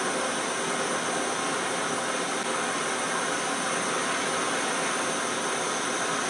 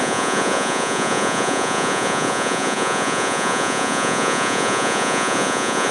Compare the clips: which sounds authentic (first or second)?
first